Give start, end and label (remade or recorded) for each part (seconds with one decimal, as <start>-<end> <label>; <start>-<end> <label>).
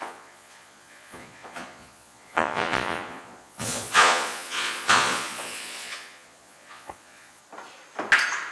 0.0-7.4 remade; 7.4-8.5 recorded